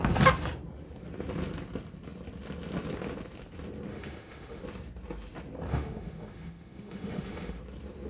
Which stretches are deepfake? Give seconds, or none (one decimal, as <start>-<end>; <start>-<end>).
3.9-4.6; 5.7-7.6